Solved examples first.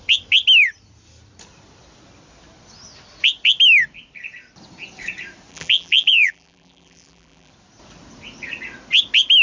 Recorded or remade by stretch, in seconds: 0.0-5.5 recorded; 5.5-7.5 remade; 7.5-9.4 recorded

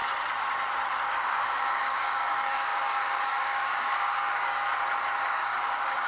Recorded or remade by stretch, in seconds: 0.0-0.9 recorded; 0.9-4.7 remade; 4.7-5.3 recorded; 5.3-6.1 remade

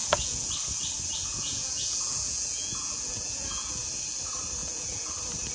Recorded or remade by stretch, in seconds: 0.0-0.5 remade; 0.5-1.3 recorded; 1.3-3.8 remade; 3.8-4.6 recorded; 4.6-5.1 remade; 5.1-5.5 recorded

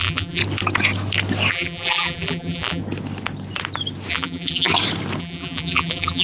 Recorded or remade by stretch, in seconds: 0.0-0.4 remade; 0.4-1.5 recorded; 1.5-2.8 remade; 2.8-4.1 recorded; 4.1-4.7 remade; 4.7-5.2 recorded; 5.2-6.2 remade

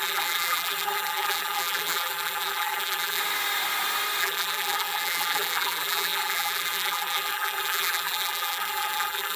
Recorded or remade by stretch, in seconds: 0.0-3.2 remade; 3.2-4.2 recorded; 4.2-9.4 remade

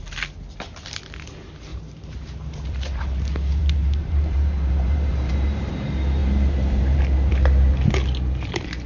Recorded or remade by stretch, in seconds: 0.0-1.7 recorded; 1.7-3.0 remade; 3.0-3.6 recorded; 3.6-5.7 remade; 5.7-6.2 recorded; 6.2-7.0 remade; 7.0-8.9 recorded

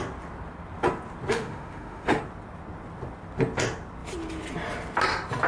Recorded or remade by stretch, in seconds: 0.0-1.3 recorded; 1.3-2.2 remade; 2.2-5.5 recorded